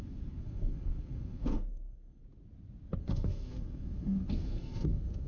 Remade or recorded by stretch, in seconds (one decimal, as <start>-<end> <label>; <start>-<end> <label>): 0.0-2.2 remade; 2.2-3.0 recorded; 3.0-5.3 remade